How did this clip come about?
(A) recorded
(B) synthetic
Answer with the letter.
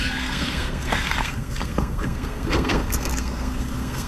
B